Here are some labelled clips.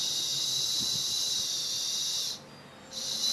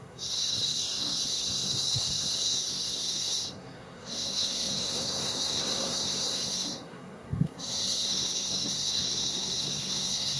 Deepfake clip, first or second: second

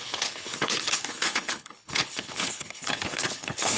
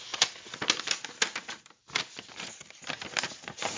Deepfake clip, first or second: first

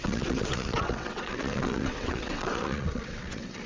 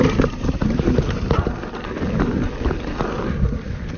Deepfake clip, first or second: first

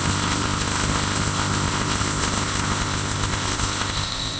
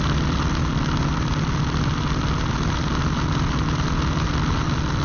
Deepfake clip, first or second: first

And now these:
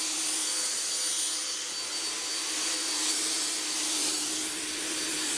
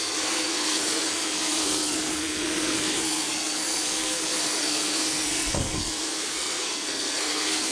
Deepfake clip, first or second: second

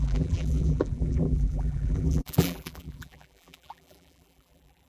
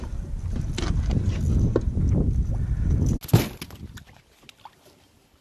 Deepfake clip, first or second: first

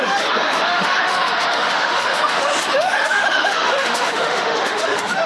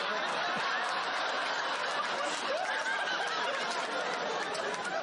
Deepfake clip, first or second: first